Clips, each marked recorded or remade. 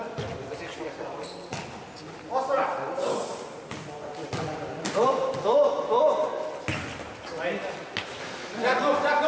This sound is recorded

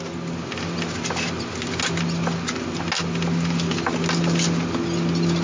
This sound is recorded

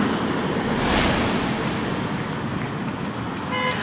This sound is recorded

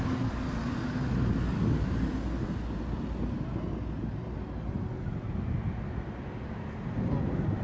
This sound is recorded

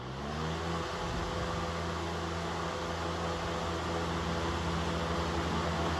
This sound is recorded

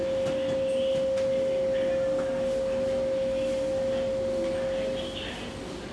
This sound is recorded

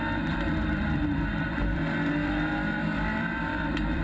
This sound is remade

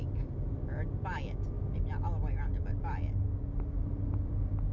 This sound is recorded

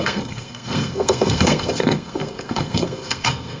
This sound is remade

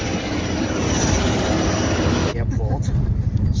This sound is recorded